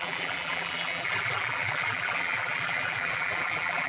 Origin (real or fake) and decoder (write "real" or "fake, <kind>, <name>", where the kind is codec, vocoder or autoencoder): fake, vocoder, BigVGAN v2